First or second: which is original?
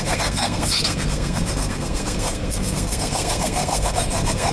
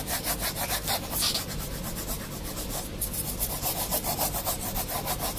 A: second